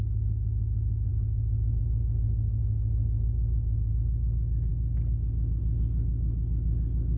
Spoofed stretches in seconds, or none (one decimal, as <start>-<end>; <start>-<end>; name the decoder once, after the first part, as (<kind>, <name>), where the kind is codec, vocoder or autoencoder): none

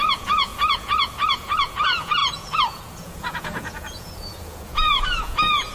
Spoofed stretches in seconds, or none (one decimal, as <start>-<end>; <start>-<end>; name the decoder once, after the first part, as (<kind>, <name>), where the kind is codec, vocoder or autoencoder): 0.0-5.7 (vocoder, Vocos)